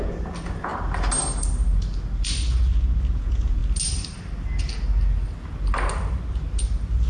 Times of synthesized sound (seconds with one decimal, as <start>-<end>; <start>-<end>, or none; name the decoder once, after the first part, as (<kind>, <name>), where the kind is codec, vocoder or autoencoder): 0.0-0.7 (vocoder, Vocos); 3.1-3.6